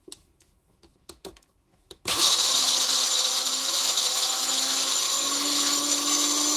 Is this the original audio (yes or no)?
no